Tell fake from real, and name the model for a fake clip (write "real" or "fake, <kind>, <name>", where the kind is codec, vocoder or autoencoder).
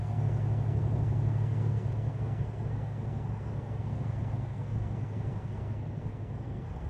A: fake, codec, SNAC